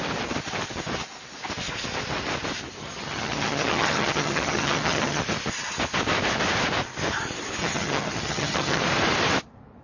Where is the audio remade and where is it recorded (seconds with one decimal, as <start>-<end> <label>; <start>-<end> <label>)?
0.0-2.8 recorded; 2.8-5.2 remade; 5.2-7.6 recorded; 7.6-8.8 remade; 8.8-9.8 recorded